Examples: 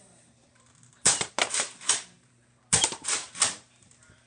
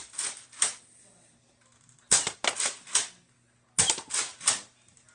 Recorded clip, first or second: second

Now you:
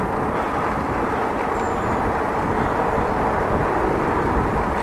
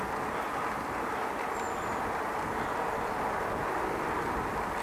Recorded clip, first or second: second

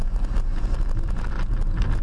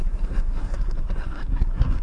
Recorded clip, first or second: first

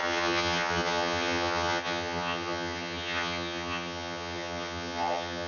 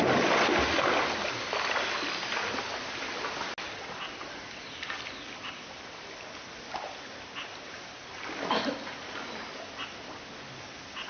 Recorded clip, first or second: second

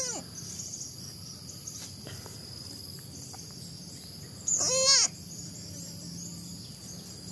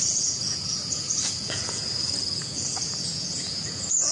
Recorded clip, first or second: first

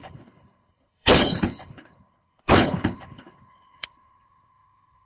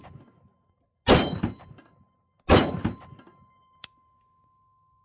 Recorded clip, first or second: second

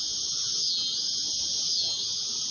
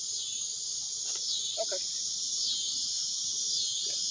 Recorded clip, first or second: first